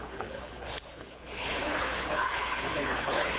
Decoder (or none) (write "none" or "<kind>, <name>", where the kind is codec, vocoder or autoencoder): codec, HILCodec